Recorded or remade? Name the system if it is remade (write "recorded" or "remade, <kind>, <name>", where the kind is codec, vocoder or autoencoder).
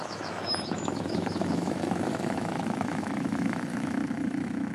remade, autoencoder, DAC-VAE